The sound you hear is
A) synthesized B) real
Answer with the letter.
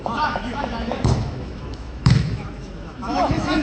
A